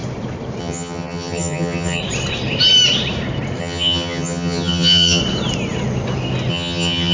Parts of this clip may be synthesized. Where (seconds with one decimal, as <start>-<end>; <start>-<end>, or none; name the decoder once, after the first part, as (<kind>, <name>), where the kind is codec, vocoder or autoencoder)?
0.6-2.0 (vocoder, HiFi-GAN); 3.6-5.2; 6.5-7.1